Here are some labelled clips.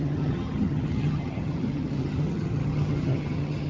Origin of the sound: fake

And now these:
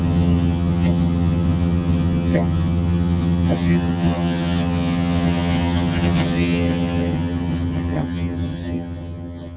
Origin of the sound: fake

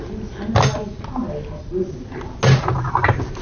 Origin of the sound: real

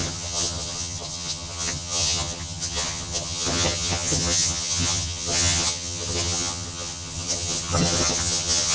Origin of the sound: fake